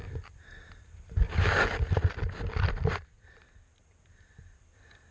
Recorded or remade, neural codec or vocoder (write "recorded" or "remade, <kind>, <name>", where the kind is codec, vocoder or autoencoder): recorded